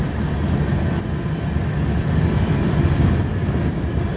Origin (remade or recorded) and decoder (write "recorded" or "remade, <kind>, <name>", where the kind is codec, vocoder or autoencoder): recorded